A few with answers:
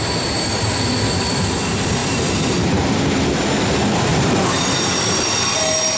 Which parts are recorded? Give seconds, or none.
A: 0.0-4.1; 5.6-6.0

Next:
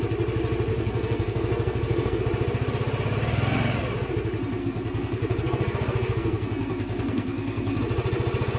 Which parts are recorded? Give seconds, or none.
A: 0.0-0.7; 2.2-4.6; 7.8-8.6

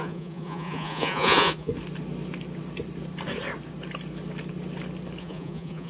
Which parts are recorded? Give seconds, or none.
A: 1.7-5.2

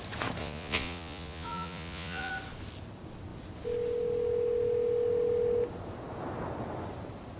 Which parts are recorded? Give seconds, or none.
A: 0.0-0.4; 2.3-7.4

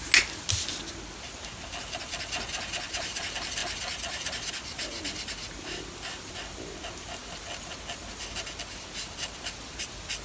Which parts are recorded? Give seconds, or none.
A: 0.0-10.2

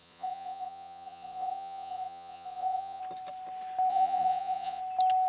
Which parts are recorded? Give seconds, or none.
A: 3.0-3.9; 4.8-5.3

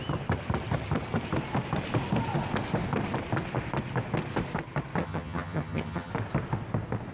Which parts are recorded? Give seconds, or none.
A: 0.0-5.0; 6.1-7.1

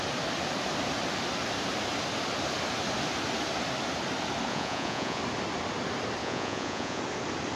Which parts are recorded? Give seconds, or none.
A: 0.0-4.5; 5.2-6.2; 7.0-7.6